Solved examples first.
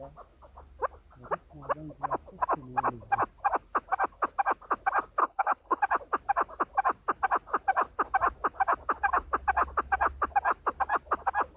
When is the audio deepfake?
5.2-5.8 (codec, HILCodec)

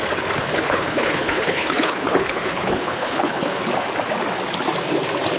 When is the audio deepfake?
0.4-3.6 (codec, HILCodec)